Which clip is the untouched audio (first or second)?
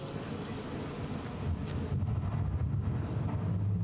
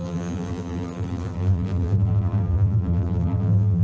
first